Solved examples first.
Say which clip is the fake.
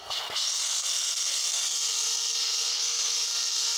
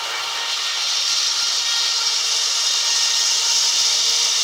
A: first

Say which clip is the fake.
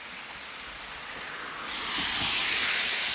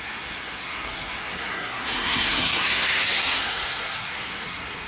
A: second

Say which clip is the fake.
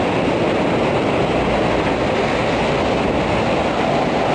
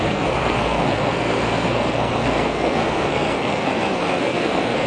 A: second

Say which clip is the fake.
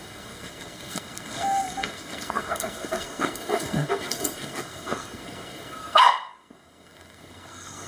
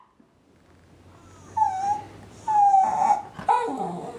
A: first